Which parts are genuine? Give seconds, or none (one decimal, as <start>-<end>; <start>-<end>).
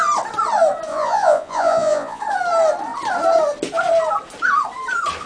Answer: 0.0-0.9; 2.2-5.3